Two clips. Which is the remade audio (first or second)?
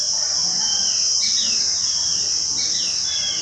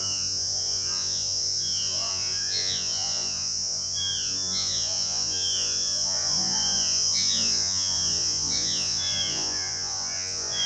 second